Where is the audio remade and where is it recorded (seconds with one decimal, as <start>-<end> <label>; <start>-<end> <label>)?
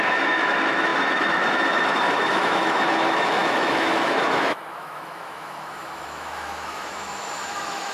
0.0-7.9 remade